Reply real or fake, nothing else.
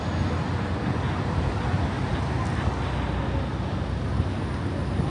real